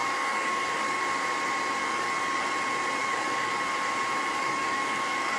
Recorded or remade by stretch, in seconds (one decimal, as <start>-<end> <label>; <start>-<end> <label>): 0.0-1.0 remade; 1.0-1.8 recorded; 1.8-2.5 remade; 2.5-3.0 recorded; 3.0-3.5 remade; 3.5-4.3 recorded; 4.3-5.4 remade